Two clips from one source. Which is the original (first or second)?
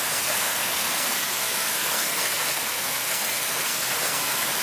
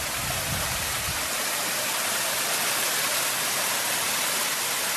second